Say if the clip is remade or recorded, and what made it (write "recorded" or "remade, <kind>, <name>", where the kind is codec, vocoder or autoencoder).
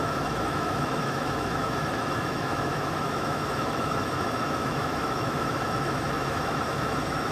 remade, autoencoder, DAC-VAE